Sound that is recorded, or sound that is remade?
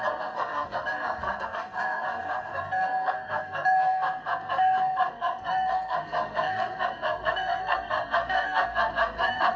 remade